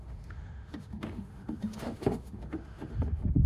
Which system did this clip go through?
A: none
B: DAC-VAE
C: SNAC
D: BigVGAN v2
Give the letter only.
B